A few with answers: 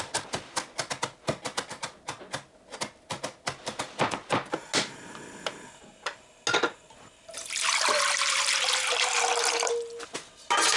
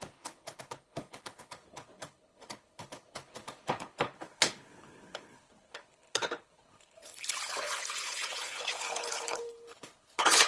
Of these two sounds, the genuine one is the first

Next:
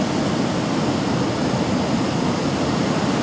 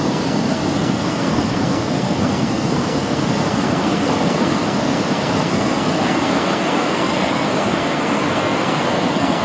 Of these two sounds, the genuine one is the first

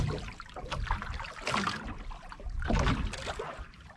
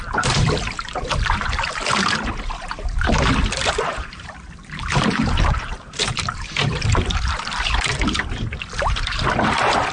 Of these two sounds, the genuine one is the first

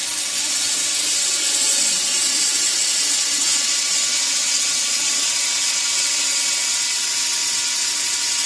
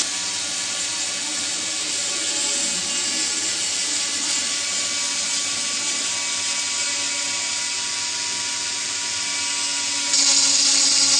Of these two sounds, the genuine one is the second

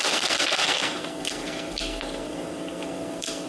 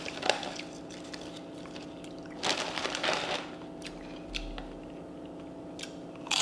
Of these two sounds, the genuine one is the second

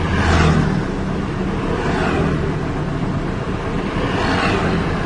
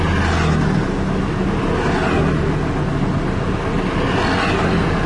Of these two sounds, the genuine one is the second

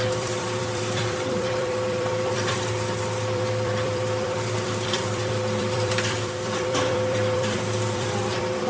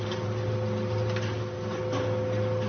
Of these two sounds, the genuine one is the second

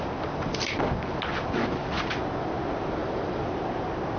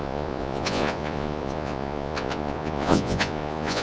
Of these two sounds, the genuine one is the first